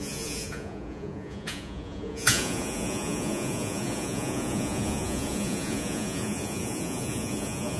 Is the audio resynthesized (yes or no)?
yes